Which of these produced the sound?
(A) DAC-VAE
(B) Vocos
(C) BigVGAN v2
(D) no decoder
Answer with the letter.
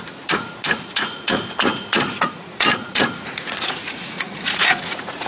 B